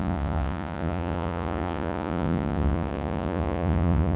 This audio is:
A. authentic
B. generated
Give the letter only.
B